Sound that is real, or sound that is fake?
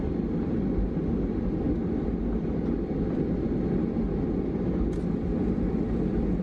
real